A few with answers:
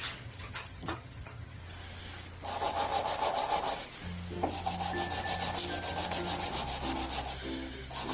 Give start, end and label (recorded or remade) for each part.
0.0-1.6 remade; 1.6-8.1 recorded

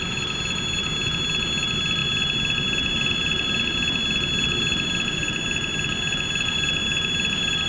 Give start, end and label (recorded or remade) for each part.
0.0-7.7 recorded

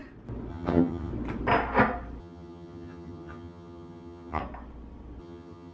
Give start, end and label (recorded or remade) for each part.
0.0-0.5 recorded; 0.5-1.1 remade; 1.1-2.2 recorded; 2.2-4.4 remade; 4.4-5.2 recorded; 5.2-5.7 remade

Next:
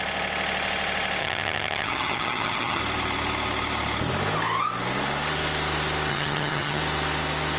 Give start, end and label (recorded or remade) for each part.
0.0-1.2 recorded; 1.2-2.8 remade; 2.8-6.1 recorded; 6.1-6.8 remade; 6.8-7.6 recorded

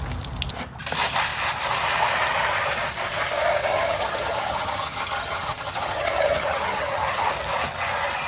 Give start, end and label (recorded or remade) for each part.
0.0-3.7 recorded; 3.7-7.3 remade; 7.3-8.3 recorded